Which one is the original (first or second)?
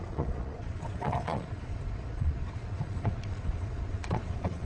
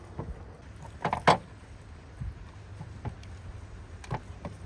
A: second